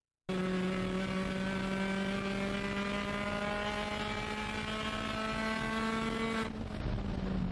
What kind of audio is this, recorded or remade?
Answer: recorded